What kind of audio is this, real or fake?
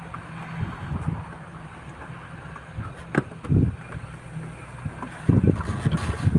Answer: real